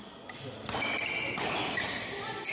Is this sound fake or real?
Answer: real